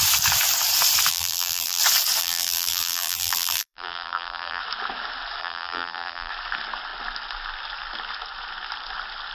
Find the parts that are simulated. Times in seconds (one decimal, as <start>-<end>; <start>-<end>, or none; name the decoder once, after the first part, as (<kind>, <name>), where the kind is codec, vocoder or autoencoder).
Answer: 1.1-1.8 (vocoder, BigVGAN v2); 2.2-4.6; 5.4-6.3